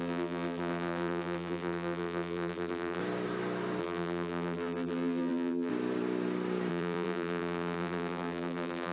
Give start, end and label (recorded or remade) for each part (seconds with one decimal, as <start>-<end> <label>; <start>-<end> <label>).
0.0-3.0 remade; 3.0-3.8 recorded; 3.8-5.7 remade; 5.7-6.7 recorded; 6.7-8.9 remade